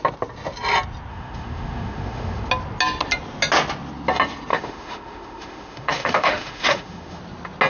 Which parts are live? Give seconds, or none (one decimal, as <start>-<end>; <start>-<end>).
0.0-1.1; 2.5-4.5; 7.2-7.7